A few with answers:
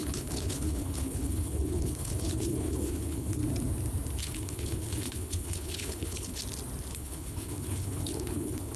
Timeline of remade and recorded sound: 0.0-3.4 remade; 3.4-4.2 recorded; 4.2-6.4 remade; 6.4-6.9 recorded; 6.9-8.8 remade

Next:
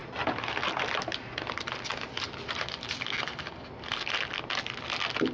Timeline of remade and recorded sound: 0.0-5.3 recorded

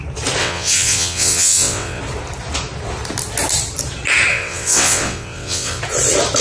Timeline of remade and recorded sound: 0.0-0.4 recorded; 0.4-2.0 remade; 2.0-4.3 recorded; 4.3-5.8 remade; 5.8-6.4 recorded

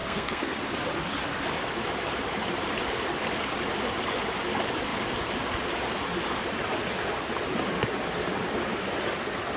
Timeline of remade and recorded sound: 0.0-0.6 remade; 0.6-9.6 recorded

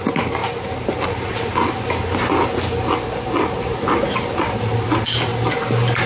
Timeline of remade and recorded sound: 0.0-6.1 recorded